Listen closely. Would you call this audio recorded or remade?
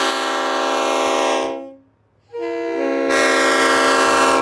recorded